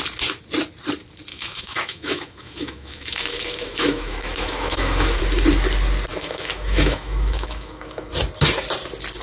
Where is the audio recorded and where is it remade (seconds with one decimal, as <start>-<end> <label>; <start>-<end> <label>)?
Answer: 0.0-1.3 recorded; 1.3-5.2 remade; 5.2-6.1 recorded; 6.1-8.1 remade; 8.1-9.2 recorded